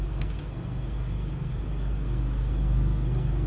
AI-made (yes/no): yes